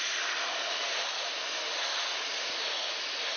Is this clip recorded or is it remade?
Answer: recorded